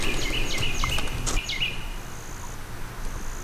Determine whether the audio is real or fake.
real